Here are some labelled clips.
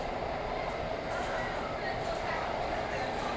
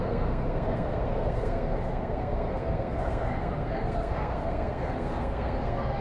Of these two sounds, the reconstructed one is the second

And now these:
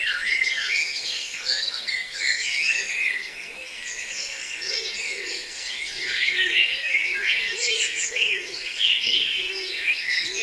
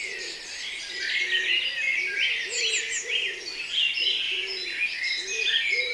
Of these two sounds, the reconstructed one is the first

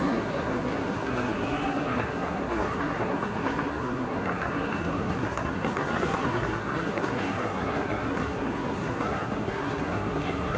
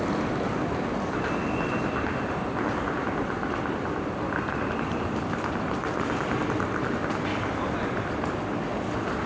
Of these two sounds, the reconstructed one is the first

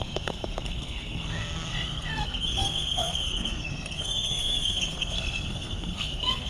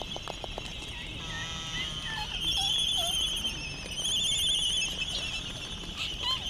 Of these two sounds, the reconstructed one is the first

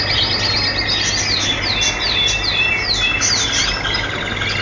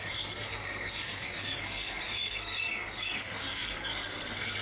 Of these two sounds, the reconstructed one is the second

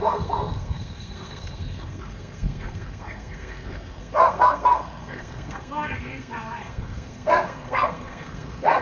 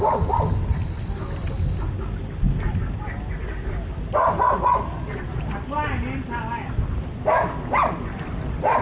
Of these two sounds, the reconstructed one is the first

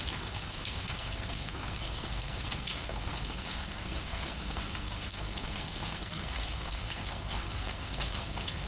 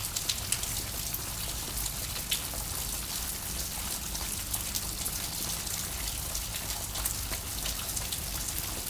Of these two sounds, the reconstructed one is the first